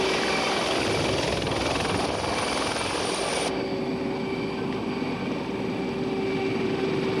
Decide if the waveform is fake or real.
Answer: real